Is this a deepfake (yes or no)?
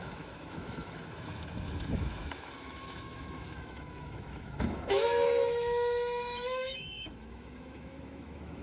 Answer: yes